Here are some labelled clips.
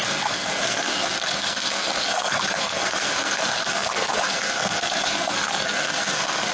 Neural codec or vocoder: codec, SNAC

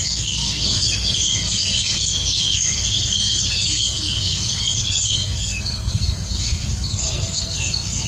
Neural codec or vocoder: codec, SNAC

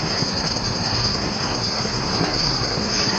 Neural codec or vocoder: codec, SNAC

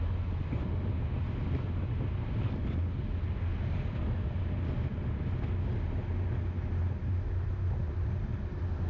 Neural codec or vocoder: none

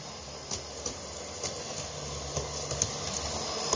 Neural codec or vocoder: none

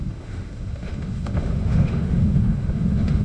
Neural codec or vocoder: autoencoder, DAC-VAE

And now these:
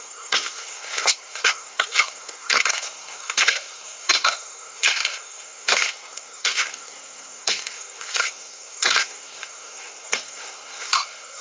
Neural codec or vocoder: codec, SNAC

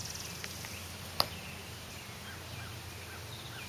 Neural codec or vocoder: none